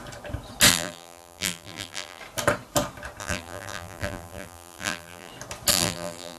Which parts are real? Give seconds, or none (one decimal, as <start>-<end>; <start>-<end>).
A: 0.0-0.7; 2.2-3.2; 5.3-5.7